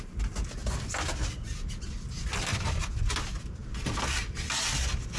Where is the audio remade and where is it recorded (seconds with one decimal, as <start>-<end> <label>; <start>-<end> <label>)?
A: 0.0-0.6 recorded; 0.6-1.3 remade; 1.3-5.2 recorded